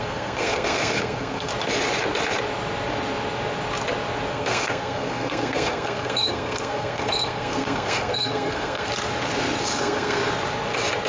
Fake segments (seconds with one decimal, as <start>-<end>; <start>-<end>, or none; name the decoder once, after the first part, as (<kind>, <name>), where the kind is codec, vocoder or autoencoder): 0.0-1.5 (codec, SNAC); 4.3-8.9; 9.6-10.2